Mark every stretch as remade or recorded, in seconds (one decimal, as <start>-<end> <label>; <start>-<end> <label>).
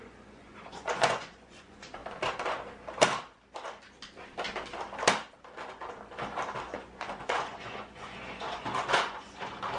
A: 0.0-2.0 remade; 2.0-6.6 recorded; 6.6-9.8 remade